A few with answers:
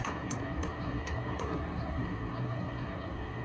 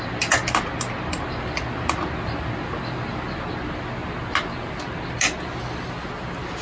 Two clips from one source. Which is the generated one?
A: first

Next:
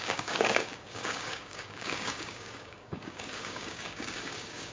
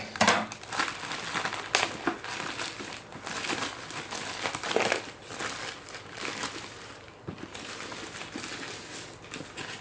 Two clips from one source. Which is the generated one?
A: first